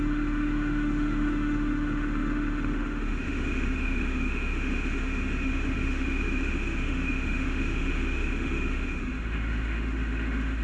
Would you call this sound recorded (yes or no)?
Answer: no